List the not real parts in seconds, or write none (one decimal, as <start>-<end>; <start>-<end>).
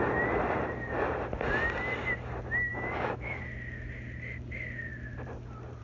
2.7-3.4